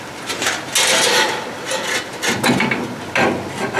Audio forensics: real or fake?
real